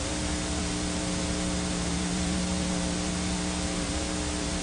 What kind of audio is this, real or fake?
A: real